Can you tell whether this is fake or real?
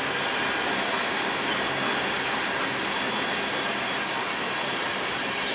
real